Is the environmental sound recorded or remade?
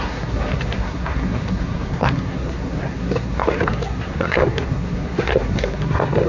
remade